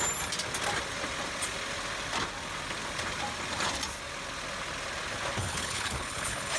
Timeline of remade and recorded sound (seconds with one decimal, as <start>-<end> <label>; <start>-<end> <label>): 0.0-5.4 recorded; 5.4-6.6 remade